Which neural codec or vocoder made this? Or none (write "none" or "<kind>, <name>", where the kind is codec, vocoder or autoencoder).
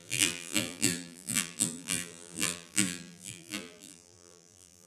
vocoder, BigVGAN v2